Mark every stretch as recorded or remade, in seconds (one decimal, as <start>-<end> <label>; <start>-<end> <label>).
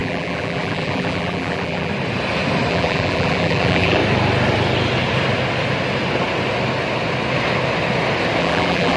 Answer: 0.0-1.9 remade; 1.9-2.7 recorded; 2.7-4.0 remade; 4.0-8.4 recorded; 8.4-9.0 remade